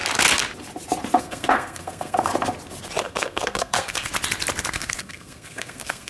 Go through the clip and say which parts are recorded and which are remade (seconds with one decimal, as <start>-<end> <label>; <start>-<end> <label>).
0.0-1.2 recorded; 1.2-2.3 remade; 2.3-3.0 recorded; 3.0-4.1 remade; 4.1-4.7 recorded; 4.7-6.1 remade

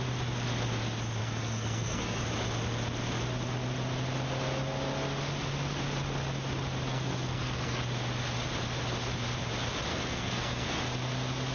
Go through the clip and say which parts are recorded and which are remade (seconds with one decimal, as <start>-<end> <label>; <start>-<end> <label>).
0.0-1.2 recorded; 1.2-2.2 remade; 2.2-6.9 recorded; 6.9-7.8 remade; 7.8-9.9 recorded; 9.9-10.8 remade; 10.8-11.5 recorded

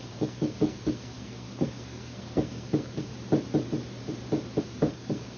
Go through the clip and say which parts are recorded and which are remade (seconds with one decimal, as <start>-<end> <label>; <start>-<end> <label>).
0.0-3.1 remade; 3.1-4.6 recorded; 4.6-5.4 remade

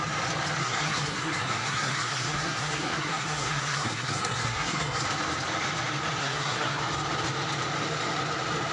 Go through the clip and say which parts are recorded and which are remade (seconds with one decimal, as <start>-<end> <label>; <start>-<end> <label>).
0.0-0.6 recorded; 0.6-5.0 remade; 5.0-6.2 recorded; 6.2-6.8 remade; 6.8-8.7 recorded

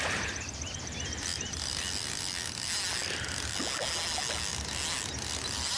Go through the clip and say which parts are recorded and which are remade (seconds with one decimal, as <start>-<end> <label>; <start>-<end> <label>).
0.0-5.8 recorded